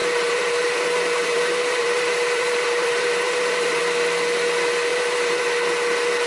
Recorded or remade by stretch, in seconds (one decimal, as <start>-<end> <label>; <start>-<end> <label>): 0.0-3.8 remade; 3.8-4.9 recorded; 4.9-5.4 remade; 5.4-6.3 recorded